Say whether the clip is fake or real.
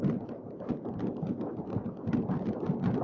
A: real